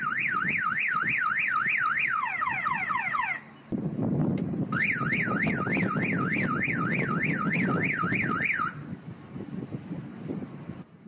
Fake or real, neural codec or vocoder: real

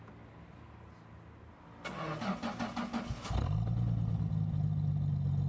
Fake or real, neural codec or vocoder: real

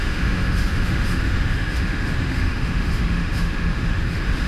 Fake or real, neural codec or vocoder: fake, autoencoder, DAC-VAE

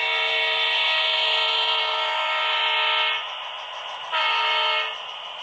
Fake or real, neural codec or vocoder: real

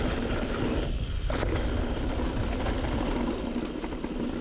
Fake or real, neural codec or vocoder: real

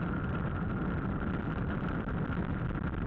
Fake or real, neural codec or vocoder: fake, vocoder, BigVGAN v2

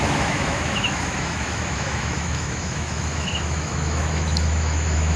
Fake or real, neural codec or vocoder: fake, autoencoder, DAC-VAE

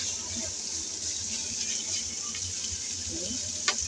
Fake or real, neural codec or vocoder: real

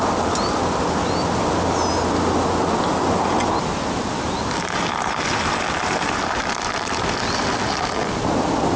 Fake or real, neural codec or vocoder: real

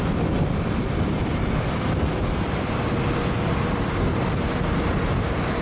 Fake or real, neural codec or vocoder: real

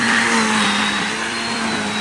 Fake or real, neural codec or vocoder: fake, vocoder, BigVGAN v2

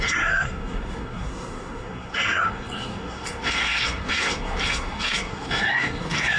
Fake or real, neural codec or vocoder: fake, codec, SNAC